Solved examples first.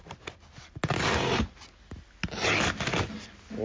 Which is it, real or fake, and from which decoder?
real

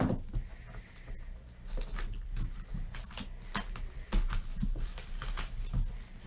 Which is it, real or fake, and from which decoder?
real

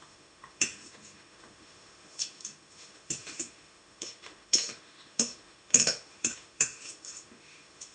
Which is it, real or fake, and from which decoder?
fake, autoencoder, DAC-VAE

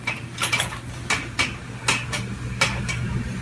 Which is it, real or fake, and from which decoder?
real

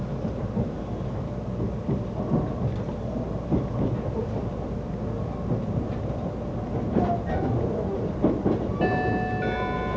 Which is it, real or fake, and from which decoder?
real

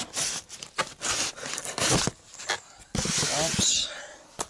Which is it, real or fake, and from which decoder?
real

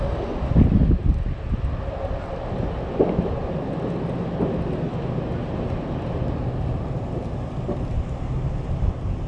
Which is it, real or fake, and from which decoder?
real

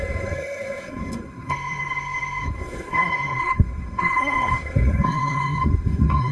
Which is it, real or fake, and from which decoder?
fake, codec, SNAC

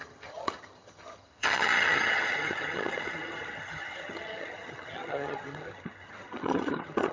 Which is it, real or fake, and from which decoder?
fake, vocoder, HiFi-GAN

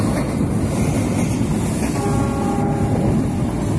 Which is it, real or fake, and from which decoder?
real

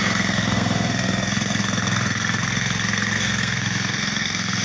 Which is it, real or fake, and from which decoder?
fake, codec, SNAC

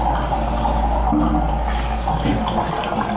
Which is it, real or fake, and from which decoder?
real